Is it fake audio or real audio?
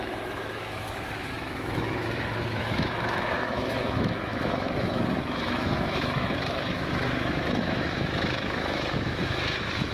fake